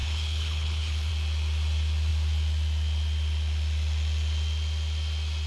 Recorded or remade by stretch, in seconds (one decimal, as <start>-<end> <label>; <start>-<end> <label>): 0.0-1.1 remade; 1.1-5.5 recorded